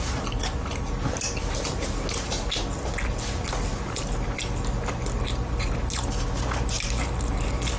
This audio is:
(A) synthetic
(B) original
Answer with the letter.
B